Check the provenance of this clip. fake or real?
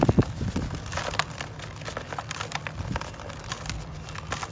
real